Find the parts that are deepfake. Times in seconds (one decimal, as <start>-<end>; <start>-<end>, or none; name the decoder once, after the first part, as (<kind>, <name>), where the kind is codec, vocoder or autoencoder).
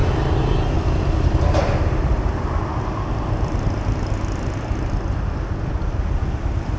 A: none